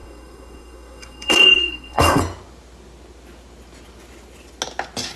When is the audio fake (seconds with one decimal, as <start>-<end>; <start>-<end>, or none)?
0.0-2.2